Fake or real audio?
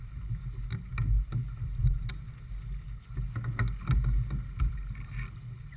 real